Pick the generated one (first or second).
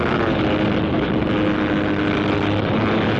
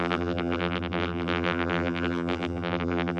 second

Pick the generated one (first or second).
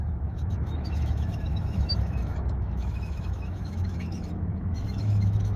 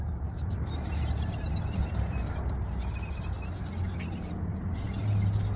first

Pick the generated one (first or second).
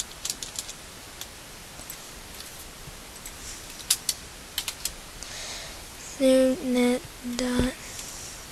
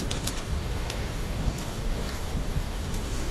second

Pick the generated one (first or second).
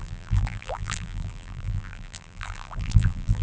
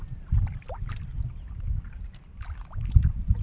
first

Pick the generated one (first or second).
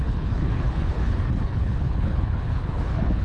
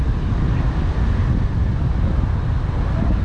first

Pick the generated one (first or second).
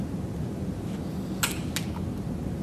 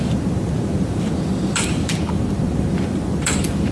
second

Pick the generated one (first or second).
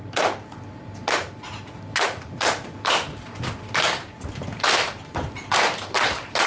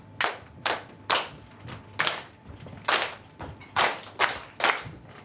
first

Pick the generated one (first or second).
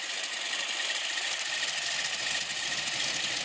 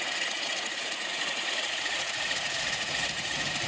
second